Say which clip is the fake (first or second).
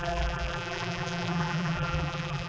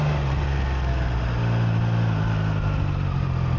first